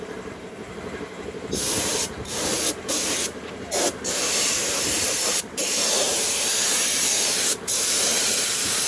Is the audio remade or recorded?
remade